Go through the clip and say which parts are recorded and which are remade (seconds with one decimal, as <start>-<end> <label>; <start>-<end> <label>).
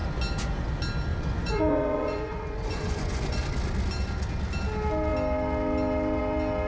0.0-1.1 recorded; 1.1-3.4 remade; 3.4-6.7 recorded